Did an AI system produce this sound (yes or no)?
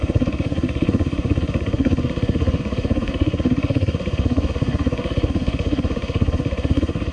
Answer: yes